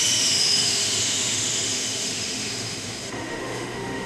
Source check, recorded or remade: remade